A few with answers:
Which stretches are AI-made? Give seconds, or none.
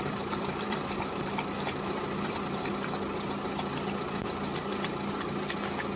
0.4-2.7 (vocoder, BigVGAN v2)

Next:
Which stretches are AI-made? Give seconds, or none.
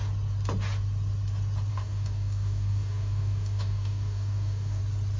1.7-4.8 (codec, DAC)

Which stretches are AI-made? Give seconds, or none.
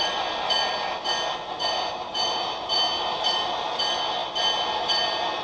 none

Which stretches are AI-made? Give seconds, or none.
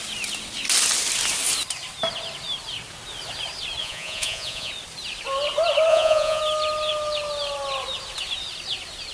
3.8-4.7 (vocoder, Vocos); 5.9-6.4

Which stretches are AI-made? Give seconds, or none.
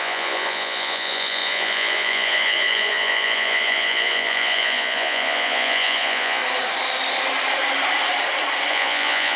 0.0-6.4 (vocoder, Vocos); 8.7-9.4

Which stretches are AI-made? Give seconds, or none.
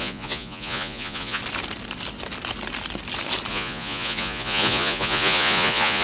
0.0-1.4 (vocoder, Vocos); 3.5-6.0